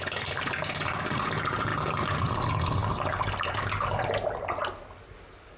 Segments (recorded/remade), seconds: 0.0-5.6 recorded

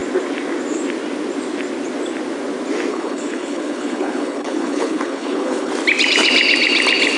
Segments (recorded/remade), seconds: 0.0-2.9 recorded; 2.9-5.7 remade; 5.7-7.2 recorded

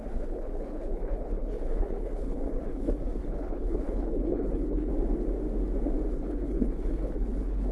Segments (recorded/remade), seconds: 0.0-4.9 remade; 4.9-6.1 recorded; 6.1-7.7 remade

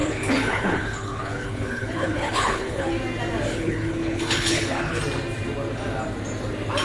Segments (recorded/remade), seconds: 0.0-2.9 remade; 2.9-3.5 recorded; 3.5-5.0 remade; 5.0-6.8 recorded